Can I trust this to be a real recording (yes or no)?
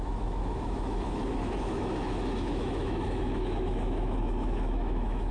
no